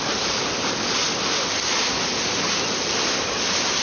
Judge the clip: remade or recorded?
recorded